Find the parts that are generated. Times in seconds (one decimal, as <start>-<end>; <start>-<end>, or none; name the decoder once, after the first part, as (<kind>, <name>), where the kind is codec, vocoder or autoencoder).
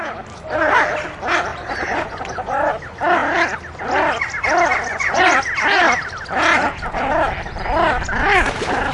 1.5-2.7 (vocoder, Vocos); 4.9-5.4